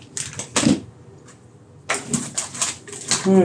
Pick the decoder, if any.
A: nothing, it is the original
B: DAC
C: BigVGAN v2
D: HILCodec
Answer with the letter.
A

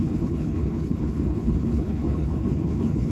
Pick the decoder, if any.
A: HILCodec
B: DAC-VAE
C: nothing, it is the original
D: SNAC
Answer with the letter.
A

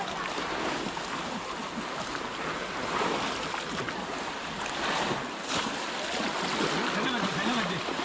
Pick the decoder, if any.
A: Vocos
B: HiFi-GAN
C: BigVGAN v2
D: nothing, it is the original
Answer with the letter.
D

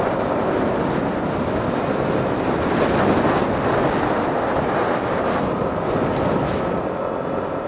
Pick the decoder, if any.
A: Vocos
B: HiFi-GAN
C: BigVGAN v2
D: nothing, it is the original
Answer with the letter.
D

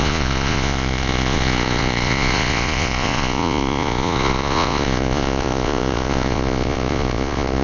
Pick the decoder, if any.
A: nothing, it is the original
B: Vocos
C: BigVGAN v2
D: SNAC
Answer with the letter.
B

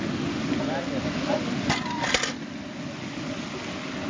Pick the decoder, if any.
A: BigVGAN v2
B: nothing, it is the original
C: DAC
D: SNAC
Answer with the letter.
B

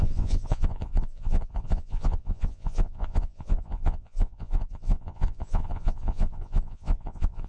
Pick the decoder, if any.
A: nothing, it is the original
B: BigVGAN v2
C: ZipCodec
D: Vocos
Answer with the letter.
D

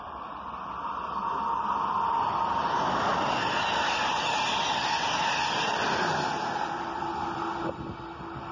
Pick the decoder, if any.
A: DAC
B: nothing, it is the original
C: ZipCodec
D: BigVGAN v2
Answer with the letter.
B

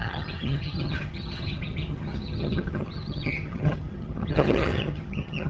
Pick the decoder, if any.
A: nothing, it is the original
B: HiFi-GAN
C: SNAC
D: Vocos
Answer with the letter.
B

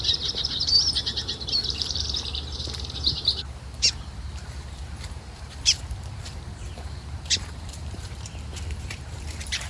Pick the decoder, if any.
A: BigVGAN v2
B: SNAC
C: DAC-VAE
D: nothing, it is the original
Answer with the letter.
A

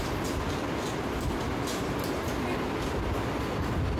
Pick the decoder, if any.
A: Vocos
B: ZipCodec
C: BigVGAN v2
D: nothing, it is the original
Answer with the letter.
D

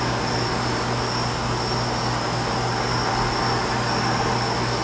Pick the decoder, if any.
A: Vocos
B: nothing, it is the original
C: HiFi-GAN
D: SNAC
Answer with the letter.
B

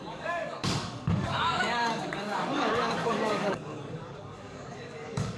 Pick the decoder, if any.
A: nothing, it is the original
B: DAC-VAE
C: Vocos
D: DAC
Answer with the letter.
D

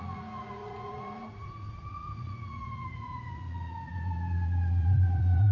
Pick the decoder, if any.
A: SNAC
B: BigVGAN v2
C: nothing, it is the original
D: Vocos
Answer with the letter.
D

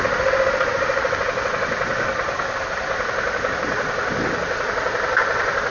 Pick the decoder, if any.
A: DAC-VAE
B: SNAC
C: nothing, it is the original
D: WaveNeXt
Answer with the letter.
C